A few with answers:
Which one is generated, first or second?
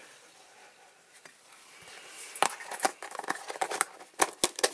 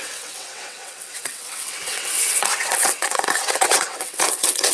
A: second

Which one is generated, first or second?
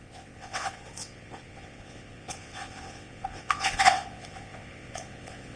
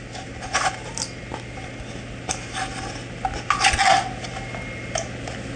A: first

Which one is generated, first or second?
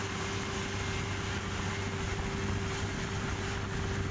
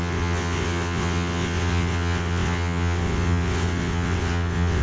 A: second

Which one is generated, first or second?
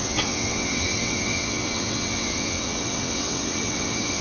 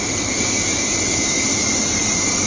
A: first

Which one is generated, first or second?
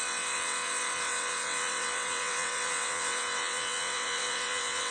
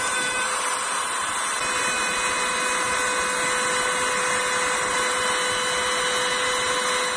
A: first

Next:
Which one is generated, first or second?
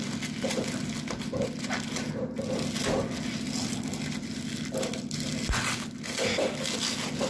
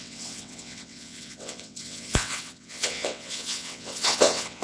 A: second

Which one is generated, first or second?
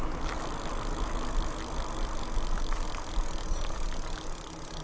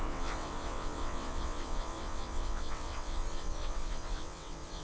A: second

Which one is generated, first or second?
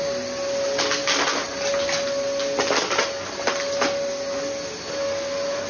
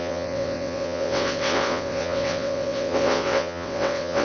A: second